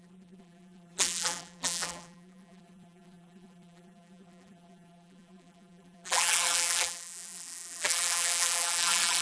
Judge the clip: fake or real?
fake